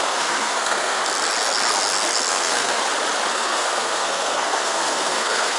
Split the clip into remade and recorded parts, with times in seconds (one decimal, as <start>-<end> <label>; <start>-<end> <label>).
0.0-1.0 remade; 1.0-2.3 recorded; 2.3-2.8 remade; 2.8-3.3 recorded; 3.3-5.6 remade